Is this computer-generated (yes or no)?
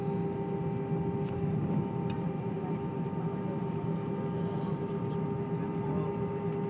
no